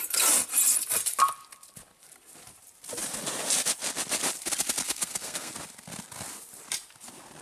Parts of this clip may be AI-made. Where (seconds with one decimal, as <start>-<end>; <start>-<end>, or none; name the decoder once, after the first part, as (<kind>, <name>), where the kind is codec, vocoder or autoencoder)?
4.8-5.5 (codec, SNAC)